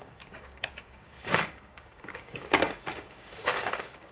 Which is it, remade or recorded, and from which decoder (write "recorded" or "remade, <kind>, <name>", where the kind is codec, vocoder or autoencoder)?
remade, codec, DAC